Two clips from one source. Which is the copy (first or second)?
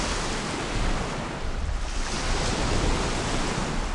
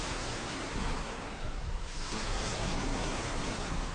second